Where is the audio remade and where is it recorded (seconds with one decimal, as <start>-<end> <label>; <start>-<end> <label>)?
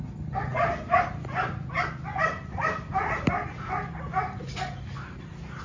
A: 0.0-5.6 recorded